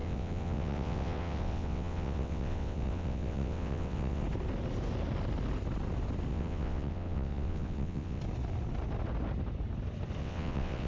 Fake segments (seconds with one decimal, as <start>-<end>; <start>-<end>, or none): 0.0-4.2; 6.3-8.2; 10.2-10.9